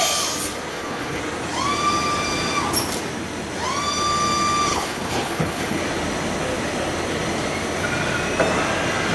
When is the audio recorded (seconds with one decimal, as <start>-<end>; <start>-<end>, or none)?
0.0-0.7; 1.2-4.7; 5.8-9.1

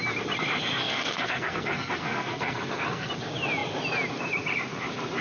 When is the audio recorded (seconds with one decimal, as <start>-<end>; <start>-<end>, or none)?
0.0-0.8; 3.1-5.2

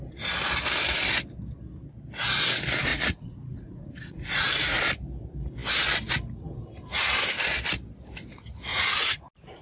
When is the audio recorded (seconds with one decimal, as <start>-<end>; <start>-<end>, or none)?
0.0-2.9; 4.8-8.7; 9.2-9.6